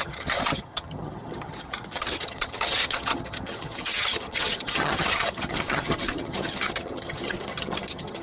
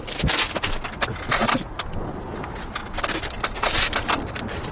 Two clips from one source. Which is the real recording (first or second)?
second